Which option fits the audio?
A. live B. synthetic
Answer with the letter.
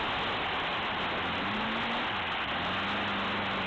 A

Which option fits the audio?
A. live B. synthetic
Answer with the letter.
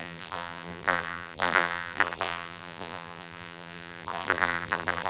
B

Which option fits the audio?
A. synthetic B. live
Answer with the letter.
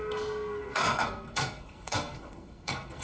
A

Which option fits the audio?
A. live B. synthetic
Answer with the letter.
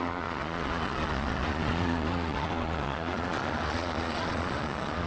B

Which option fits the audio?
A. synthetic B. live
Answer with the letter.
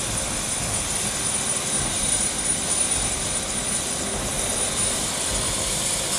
A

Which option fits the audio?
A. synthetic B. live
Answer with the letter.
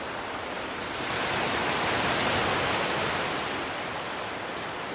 B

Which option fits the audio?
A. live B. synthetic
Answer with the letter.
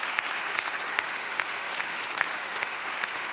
B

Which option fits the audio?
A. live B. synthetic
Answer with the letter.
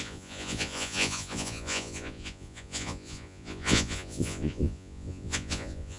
B